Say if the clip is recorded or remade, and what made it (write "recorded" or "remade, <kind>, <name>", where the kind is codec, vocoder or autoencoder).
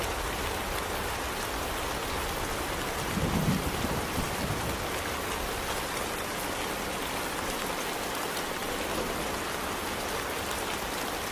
recorded